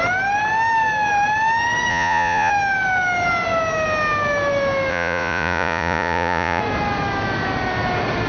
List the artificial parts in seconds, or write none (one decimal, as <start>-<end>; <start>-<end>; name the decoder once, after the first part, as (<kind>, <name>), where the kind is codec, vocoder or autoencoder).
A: 1.9-2.5 (vocoder, Vocos); 4.9-6.6